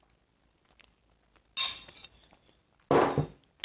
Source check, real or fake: real